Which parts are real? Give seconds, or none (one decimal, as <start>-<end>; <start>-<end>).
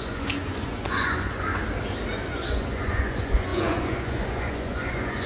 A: 1.6-2.3